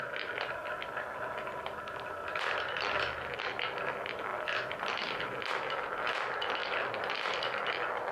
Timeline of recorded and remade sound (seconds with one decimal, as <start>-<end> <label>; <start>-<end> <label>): 0.0-4.3 recorded; 4.3-5.2 remade; 5.2-6.6 recorded; 6.6-7.6 remade; 7.6-8.1 recorded

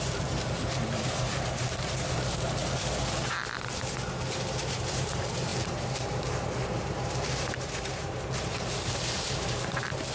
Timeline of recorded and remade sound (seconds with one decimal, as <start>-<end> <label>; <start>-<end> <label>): 0.0-2.6 remade; 2.6-4.6 recorded; 4.6-10.1 remade

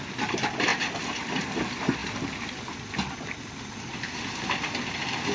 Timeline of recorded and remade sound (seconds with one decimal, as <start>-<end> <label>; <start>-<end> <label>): 0.0-0.7 remade; 0.7-1.4 recorded; 1.4-2.0 remade; 2.0-5.3 recorded

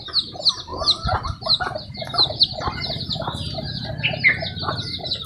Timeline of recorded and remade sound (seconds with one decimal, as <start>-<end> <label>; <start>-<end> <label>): 0.0-0.7 recorded; 0.7-3.9 remade; 3.9-5.3 recorded

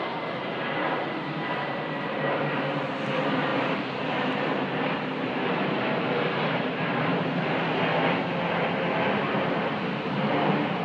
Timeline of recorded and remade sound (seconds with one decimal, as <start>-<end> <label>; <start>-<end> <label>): 0.0-7.7 remade; 7.7-10.0 recorded; 10.0-10.8 remade

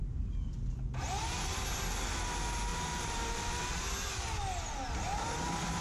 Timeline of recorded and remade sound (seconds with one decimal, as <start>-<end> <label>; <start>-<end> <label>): 0.0-2.7 recorded; 2.7-3.3 remade; 3.3-5.8 recorded

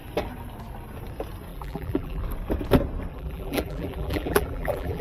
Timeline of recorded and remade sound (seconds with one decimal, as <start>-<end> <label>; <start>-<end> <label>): 0.0-1.5 recorded; 1.5-2.2 remade; 2.2-3.1 recorded; 3.1-5.0 remade

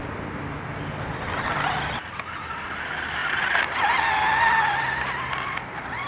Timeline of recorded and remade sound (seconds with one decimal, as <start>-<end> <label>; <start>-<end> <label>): 0.0-6.1 remade